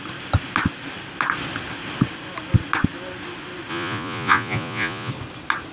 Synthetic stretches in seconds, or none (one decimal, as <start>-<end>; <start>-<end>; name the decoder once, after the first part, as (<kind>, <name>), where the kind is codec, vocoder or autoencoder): 3.7-5.1 (vocoder, Vocos)